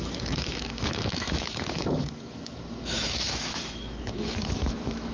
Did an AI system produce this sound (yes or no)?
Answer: yes